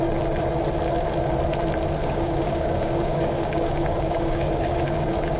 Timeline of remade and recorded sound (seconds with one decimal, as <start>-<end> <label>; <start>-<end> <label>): 0.0-2.0 recorded; 2.0-5.4 remade